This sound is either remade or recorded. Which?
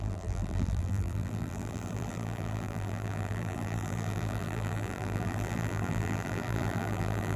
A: remade